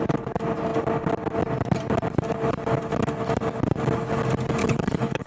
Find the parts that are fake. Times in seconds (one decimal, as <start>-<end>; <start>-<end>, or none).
4.6-5.3